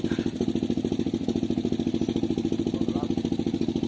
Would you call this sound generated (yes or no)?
no